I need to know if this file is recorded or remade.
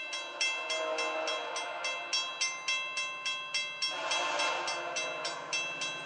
recorded